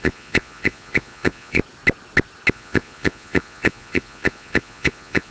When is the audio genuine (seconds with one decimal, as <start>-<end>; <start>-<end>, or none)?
1.6-2.5

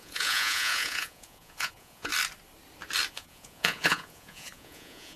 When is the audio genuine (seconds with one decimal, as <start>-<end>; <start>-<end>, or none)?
2.1-3.1

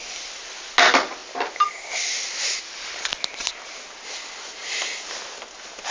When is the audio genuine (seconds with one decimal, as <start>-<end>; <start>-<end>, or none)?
0.0-5.9

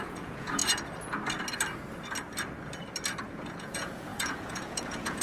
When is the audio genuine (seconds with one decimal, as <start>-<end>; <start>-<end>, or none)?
0.6-3.2

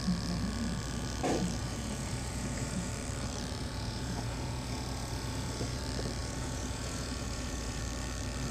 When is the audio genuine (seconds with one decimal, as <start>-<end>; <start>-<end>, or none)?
0.0-1.6; 2.9-3.6; 5.8-6.2; 7.8-8.5

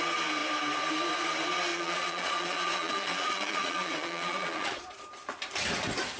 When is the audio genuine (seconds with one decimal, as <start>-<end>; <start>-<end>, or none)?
0.0-1.7; 5.0-6.2

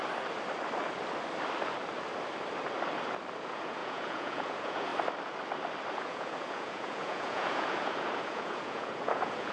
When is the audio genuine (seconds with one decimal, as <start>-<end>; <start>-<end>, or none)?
0.0-3.4; 4.9-5.9